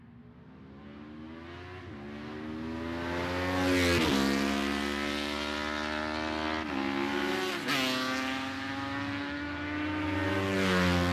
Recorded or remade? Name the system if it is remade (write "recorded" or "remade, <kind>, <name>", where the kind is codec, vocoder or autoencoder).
recorded